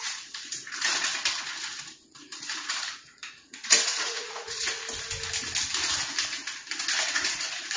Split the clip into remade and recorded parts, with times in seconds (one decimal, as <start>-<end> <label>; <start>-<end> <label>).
0.0-1.1 remade; 1.1-2.1 recorded; 2.1-4.8 remade; 4.8-7.1 recorded; 7.1-7.8 remade